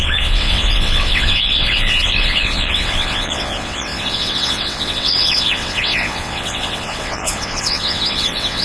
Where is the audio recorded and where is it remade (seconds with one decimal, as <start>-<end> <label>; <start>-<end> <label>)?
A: 0.0-8.6 remade